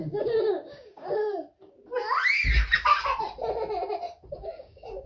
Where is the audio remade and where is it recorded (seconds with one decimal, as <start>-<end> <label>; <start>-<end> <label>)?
0.0-1.2 remade; 1.2-4.3 recorded; 4.3-5.1 remade